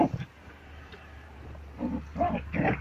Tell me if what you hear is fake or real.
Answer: fake